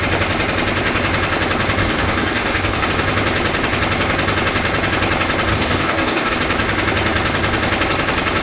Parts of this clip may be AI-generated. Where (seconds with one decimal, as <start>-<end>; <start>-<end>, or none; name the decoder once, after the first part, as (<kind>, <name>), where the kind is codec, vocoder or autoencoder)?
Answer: 1.8-2.9 (codec, DAC); 5.5-6.3